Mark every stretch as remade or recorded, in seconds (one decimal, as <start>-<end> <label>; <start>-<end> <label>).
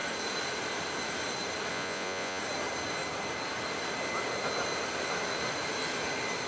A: 0.0-1.7 recorded; 1.7-2.4 remade; 2.4-6.5 recorded